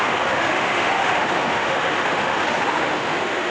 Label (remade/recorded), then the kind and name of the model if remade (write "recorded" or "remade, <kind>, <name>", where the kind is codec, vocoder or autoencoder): remade, autoencoder, DAC-VAE